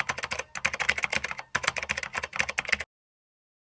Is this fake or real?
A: real